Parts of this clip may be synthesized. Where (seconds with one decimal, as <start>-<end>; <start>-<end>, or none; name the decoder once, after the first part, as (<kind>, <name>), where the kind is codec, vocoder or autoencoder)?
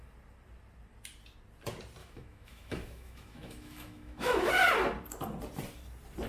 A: 2.0-4.5 (autoencoder, DAC-VAE)